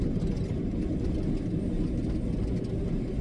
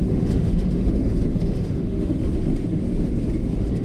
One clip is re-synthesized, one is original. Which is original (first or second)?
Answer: first